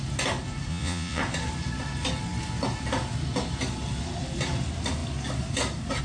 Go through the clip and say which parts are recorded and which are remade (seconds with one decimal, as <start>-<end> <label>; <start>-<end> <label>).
0.0-0.7 recorded; 0.7-1.2 remade; 1.2-6.0 recorded